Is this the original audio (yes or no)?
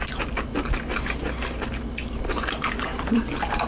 yes